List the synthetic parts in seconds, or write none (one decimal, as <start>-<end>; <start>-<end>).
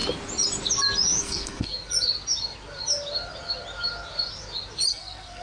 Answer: 1.2-1.7; 4.9-5.4